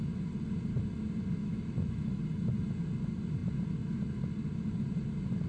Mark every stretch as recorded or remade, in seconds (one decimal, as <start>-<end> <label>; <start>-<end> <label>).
0.0-1.4 recorded; 1.4-2.2 remade; 2.2-5.5 recorded